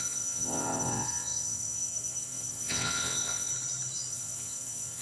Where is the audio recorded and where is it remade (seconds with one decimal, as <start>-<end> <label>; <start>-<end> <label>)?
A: 0.0-3.5 remade; 3.5-4.1 recorded; 4.1-5.0 remade